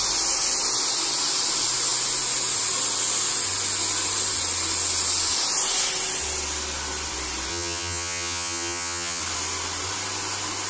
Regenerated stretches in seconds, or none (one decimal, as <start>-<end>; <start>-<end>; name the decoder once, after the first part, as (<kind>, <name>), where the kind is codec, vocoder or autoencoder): 7.5-9.2 (vocoder, HiFi-GAN)